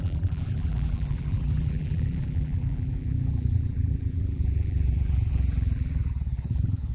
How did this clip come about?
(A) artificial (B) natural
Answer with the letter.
A